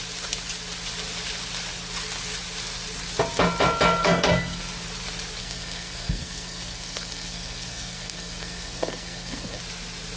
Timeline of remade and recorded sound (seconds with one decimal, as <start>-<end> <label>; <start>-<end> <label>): 0.0-4.0 recorded; 4.0-4.6 remade; 4.6-5.4 recorded; 5.4-9.6 remade; 9.6-10.2 recorded